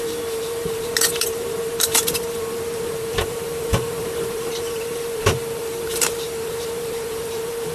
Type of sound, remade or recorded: remade